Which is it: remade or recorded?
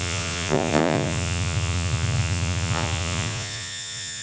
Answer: remade